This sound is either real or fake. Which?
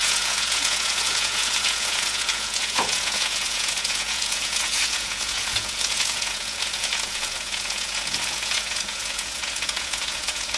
fake